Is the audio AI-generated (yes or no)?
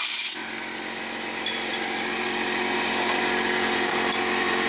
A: no